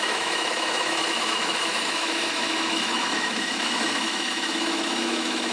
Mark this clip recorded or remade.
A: remade